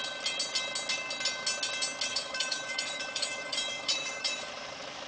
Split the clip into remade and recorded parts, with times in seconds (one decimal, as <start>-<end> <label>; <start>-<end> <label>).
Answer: 0.0-2.1 recorded; 2.1-4.5 remade; 4.5-5.1 recorded